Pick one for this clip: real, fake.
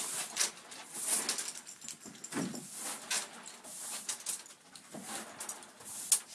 real